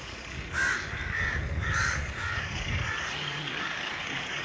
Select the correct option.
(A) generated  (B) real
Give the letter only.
A